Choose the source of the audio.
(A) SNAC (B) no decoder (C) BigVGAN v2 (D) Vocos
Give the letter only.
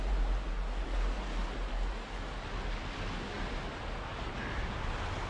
B